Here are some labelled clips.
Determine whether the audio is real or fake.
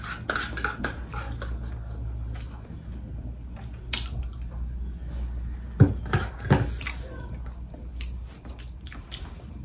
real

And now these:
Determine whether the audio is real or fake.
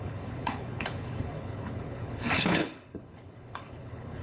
fake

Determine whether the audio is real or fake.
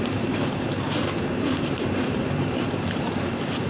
fake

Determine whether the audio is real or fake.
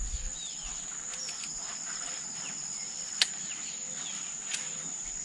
real